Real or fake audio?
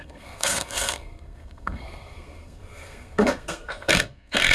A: fake